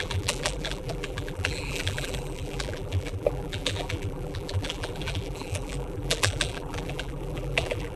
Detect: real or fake fake